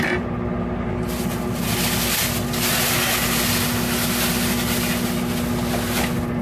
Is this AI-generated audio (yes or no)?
no